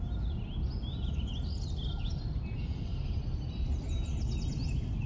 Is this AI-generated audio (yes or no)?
no